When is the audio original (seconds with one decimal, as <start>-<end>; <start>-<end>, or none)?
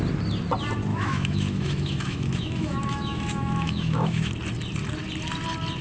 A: 0.0-0.9; 4.3-5.8